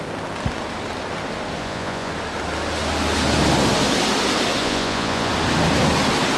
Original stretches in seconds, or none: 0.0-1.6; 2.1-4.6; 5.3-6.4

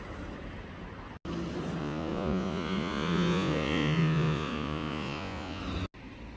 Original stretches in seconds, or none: 0.0-1.8; 5.6-6.4

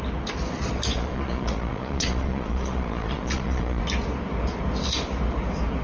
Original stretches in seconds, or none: 0.0-0.9; 3.8-5.8